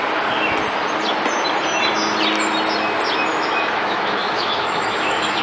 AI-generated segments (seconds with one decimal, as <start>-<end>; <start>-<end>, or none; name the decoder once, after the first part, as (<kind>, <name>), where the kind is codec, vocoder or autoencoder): 3.3-5.4 (autoencoder, DAC-VAE)